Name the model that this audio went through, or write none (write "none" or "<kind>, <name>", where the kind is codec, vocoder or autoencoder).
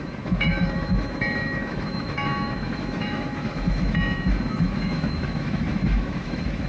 autoencoder, DAC-VAE